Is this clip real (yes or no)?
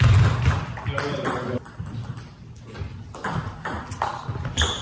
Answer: yes